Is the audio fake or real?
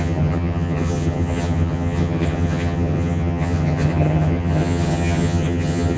fake